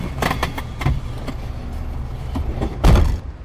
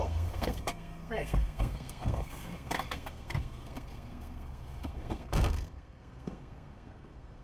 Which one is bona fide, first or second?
first